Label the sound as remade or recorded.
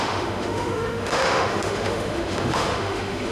remade